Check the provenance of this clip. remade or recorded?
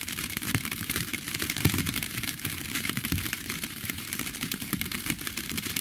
remade